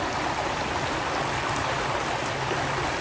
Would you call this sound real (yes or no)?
yes